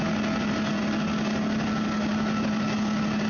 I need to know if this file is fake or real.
real